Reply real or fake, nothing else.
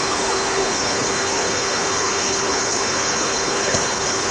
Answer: fake